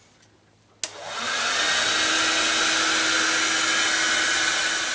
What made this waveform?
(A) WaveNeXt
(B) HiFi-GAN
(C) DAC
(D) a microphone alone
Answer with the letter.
D